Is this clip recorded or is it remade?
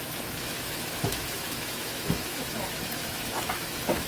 remade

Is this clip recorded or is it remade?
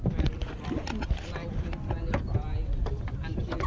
remade